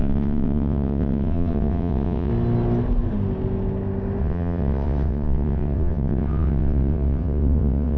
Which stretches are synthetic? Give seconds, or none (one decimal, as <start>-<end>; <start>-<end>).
0.0-2.3; 4.2-8.0